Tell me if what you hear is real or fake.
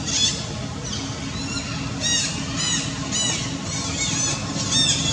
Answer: real